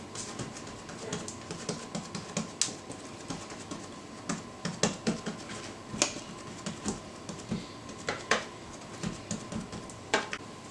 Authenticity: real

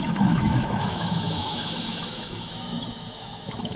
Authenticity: fake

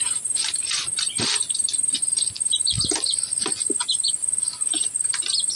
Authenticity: real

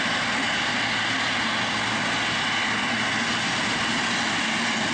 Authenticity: real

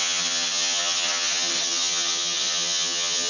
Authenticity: fake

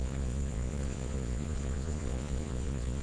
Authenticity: fake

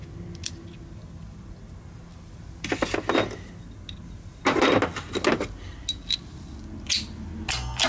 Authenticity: real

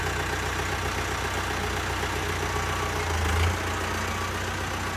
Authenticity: real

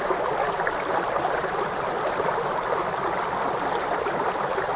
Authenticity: real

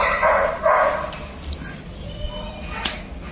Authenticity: real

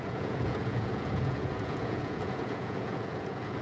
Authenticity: fake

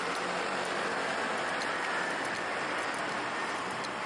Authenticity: fake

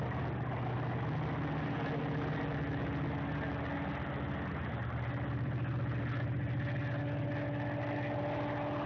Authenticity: real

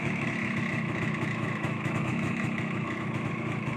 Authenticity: fake